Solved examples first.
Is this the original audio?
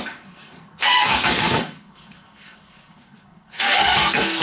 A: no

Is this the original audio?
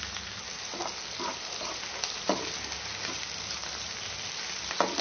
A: yes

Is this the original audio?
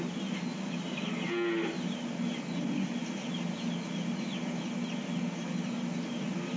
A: yes